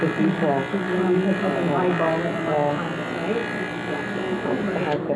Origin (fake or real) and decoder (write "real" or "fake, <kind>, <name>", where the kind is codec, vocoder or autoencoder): real